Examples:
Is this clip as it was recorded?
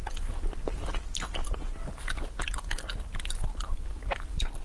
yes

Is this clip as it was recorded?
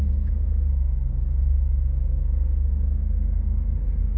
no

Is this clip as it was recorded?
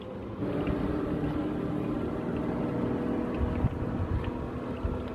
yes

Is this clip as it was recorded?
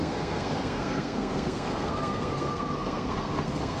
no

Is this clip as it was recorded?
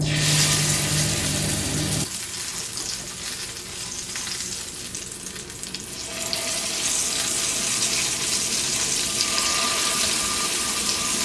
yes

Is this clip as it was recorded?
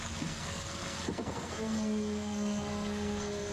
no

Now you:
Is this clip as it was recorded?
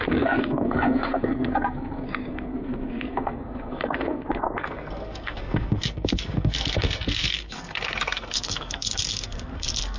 no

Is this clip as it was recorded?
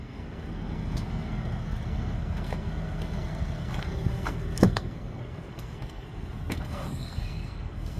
no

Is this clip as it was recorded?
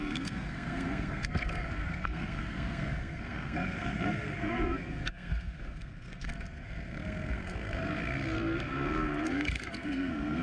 no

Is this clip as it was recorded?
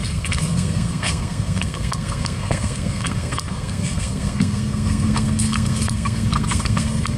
no